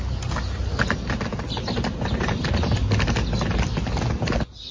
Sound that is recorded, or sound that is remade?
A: recorded